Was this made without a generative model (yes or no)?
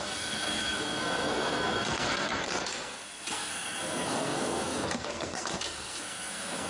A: no